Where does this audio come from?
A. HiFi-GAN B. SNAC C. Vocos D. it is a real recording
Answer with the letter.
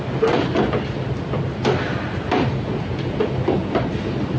D